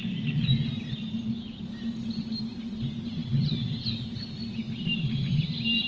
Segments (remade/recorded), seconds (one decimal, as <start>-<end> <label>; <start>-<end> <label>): 0.0-5.9 recorded